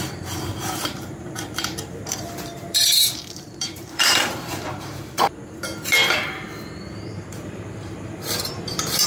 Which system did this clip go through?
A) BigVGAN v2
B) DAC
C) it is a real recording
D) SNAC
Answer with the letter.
A